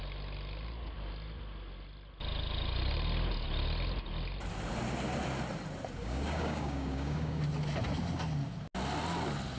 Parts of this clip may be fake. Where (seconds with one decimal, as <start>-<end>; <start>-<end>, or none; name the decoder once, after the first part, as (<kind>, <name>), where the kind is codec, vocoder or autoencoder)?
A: 6.0-7.4 (codec, DAC)